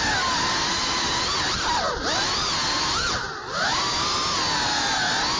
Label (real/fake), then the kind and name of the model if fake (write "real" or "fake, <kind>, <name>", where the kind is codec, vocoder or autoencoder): real